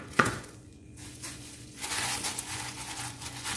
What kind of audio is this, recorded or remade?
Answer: remade